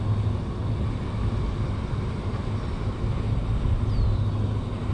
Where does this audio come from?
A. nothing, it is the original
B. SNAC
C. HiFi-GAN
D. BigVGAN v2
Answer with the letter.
A